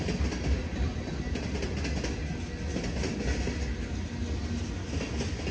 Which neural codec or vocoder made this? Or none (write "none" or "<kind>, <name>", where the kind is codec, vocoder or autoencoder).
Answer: none